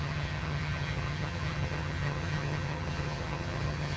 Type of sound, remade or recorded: remade